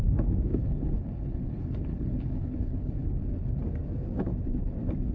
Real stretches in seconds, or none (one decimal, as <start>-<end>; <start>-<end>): 0.0-0.5; 2.9-5.1